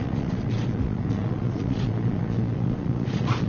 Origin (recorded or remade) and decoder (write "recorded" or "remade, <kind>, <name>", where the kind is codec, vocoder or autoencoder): remade, vocoder, Vocos